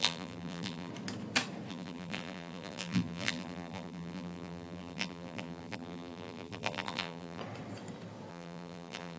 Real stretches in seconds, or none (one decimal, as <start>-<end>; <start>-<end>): 0.9-1.7; 7.4-8.3